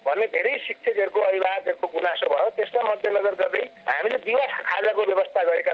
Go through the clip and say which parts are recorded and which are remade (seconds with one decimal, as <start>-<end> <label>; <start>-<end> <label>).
0.0-5.7 recorded